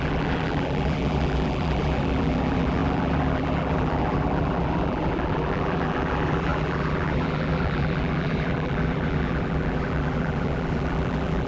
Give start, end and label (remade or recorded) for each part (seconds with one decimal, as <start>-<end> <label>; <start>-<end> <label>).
0.0-11.5 remade